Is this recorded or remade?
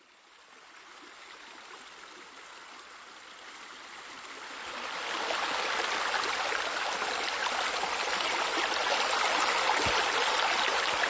recorded